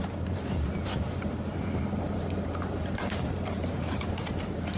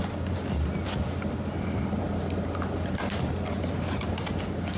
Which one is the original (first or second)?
second